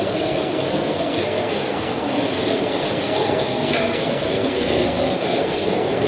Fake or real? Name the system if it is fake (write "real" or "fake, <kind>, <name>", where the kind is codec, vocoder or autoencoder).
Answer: fake, codec, SNAC